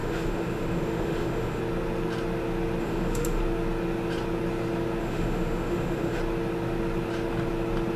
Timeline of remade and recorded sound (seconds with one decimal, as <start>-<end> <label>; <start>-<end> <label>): 0.0-1.6 remade; 1.6-2.8 recorded; 2.8-3.4 remade; 3.4-5.0 recorded; 5.0-6.2 remade; 6.2-8.0 recorded

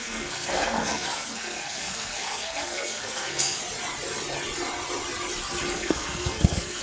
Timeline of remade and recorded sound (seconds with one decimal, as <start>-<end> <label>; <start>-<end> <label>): 0.0-3.6 remade; 3.6-5.7 recorded; 5.7-6.8 remade

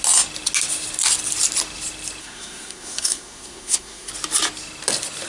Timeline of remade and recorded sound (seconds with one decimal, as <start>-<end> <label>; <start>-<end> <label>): 0.0-2.2 recorded; 2.2-4.1 remade; 4.1-5.3 recorded

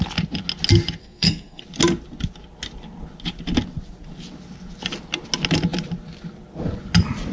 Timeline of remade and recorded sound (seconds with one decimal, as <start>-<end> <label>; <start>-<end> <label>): 0.0-1.0 recorded; 1.0-1.6 remade; 1.6-7.3 recorded

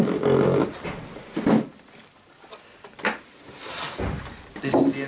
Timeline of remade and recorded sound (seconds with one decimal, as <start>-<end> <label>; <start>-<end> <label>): 0.0-1.7 recorded; 1.7-5.1 remade

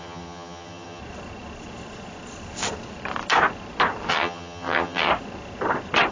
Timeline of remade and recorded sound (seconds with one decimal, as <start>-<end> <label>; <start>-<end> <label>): 0.0-1.0 remade; 1.0-4.1 recorded; 4.1-5.1 remade; 5.1-6.1 recorded